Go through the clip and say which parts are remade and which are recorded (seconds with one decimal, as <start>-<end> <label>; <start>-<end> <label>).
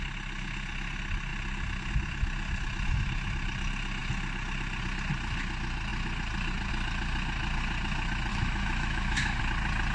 0.0-8.3 recorded; 8.3-9.4 remade; 9.4-9.9 recorded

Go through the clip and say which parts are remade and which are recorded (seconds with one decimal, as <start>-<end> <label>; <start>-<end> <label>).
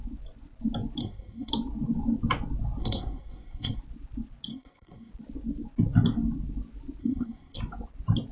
0.0-1.0 recorded; 1.0-1.5 remade; 1.5-2.8 recorded; 2.8-3.8 remade; 3.8-4.5 recorded; 4.5-5.1 remade; 5.1-7.0 recorded; 7.0-7.6 remade; 7.6-8.3 recorded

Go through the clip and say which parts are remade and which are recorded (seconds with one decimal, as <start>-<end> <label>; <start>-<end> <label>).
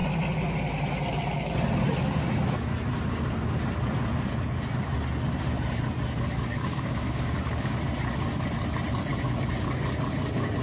0.0-6.6 recorded; 6.6-7.8 remade; 7.8-10.6 recorded